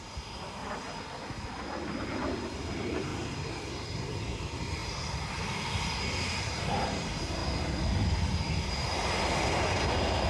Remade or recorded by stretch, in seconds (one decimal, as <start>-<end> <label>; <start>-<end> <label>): 0.0-0.6 remade; 0.6-1.6 recorded; 1.6-3.1 remade; 3.1-4.0 recorded; 4.0-4.8 remade; 4.8-6.7 recorded; 6.7-7.4 remade; 7.4-8.7 recorded; 8.7-10.3 remade